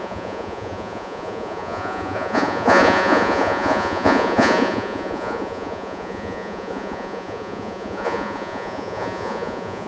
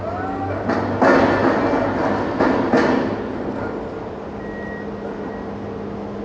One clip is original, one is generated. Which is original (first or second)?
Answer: second